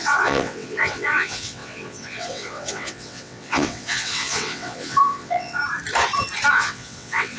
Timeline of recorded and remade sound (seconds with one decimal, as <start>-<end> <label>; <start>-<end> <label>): 0.0-5.6 remade; 5.6-6.5 recorded; 6.5-7.4 remade